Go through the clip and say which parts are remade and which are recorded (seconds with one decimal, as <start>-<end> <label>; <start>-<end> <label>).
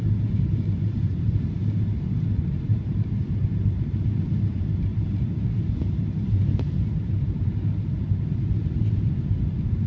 0.0-1.6 remade; 1.6-2.4 recorded; 2.4-9.9 remade